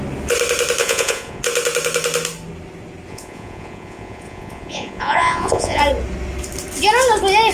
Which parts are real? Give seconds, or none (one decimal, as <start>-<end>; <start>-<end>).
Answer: 0.0-0.8; 1.4-3.1; 5.8-7.5

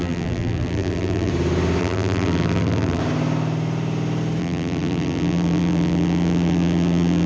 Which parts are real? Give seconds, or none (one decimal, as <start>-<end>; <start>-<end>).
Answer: 1.3-1.8; 3.0-4.4

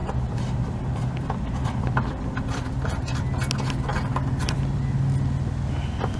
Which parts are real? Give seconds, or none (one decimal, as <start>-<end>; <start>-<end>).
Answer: 3.2-3.9; 4.8-6.2

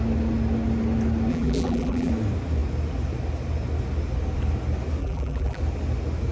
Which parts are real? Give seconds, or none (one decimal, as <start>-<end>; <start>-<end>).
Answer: 0.0-1.3; 2.1-5.0; 5.6-6.3

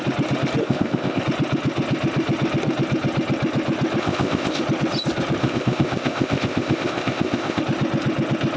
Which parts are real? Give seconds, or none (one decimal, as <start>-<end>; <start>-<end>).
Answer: 0.0-0.6; 1.2-4.0; 4.6-5.4; 7.6-8.6

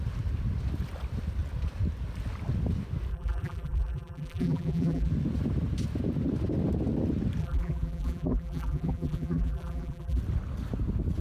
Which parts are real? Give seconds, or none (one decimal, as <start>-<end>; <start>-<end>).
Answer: 0.0-3.1; 5.1-7.4; 10.2-11.2

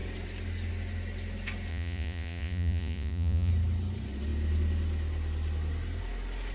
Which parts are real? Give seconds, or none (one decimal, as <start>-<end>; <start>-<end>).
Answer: 0.0-1.7; 3.5-6.5

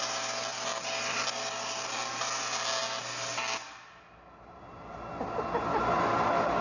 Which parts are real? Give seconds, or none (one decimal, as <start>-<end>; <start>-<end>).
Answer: 0.0-6.6